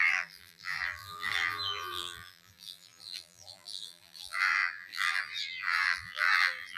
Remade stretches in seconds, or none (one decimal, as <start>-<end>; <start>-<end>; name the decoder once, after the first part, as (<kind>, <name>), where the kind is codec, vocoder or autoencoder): 0.0-6.8 (vocoder, BigVGAN v2)